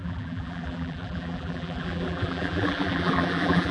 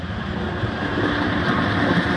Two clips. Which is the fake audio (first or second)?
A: first